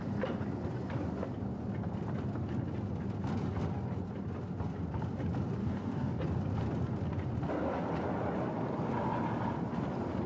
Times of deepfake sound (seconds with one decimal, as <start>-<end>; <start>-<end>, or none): 5.6-6.2